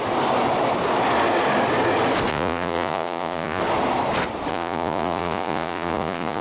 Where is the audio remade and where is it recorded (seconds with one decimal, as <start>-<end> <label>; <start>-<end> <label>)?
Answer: 0.0-2.3 recorded; 2.3-3.6 remade; 3.6-4.5 recorded; 4.5-6.4 remade